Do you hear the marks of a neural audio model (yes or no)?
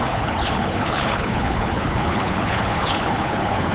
yes